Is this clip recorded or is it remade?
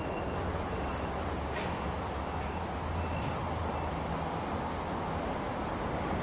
recorded